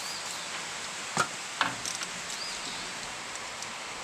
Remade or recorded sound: recorded